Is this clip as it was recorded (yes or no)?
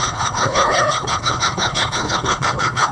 no